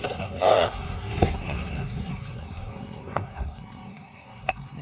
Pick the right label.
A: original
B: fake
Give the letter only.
B